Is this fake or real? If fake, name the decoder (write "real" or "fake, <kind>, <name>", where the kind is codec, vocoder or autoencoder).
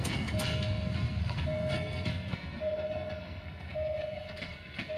fake, codec, SNAC